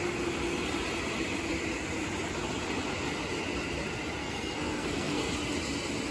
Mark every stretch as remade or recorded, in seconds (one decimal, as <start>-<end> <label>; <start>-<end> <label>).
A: 0.0-4.2 recorded; 4.2-5.3 remade; 5.3-6.1 recorded